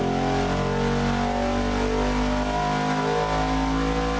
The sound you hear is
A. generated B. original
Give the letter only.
B